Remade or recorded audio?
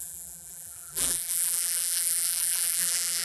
remade